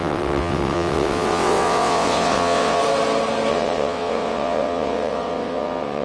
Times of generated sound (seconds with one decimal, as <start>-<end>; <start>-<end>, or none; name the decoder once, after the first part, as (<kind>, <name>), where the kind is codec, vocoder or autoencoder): 0.0-2.8 (vocoder, WaveNeXt); 3.5-6.0